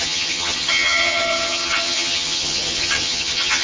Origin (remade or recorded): remade